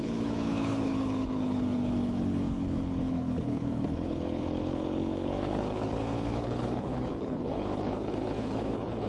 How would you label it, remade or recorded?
remade